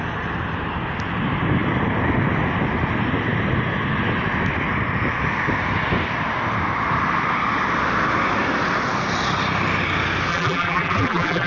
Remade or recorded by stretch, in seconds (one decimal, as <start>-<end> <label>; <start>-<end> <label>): 0.0-10.3 recorded; 10.3-11.5 remade